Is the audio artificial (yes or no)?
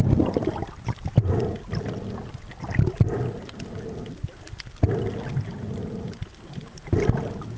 no